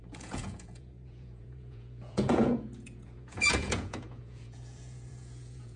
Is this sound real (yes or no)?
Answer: no